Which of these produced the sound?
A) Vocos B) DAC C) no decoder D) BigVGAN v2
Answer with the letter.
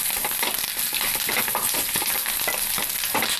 C